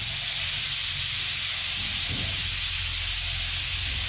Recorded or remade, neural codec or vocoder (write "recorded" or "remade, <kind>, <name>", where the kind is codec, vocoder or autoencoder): recorded